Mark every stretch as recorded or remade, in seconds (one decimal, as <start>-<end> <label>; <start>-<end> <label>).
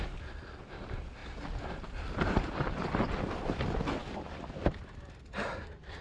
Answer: 0.0-1.2 recorded; 1.2-3.6 remade; 3.6-6.0 recorded